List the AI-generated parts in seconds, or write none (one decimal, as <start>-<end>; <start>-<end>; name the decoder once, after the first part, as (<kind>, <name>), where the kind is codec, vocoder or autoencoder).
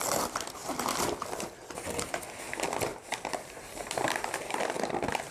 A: 0.6-1.6 (vocoder, BigVGAN v2); 2.9-4.1